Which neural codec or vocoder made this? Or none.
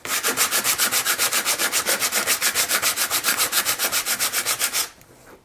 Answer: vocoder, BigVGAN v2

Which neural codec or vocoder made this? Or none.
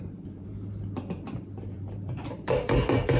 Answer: vocoder, BigVGAN v2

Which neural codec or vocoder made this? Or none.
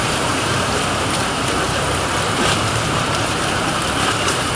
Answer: vocoder, BigVGAN v2